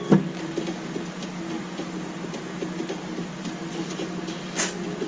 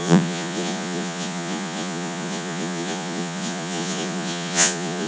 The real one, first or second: first